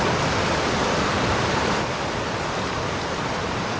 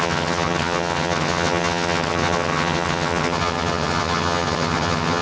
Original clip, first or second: first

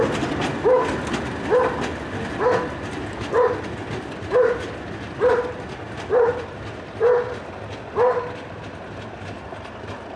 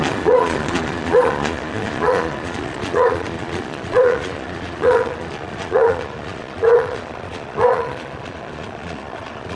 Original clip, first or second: first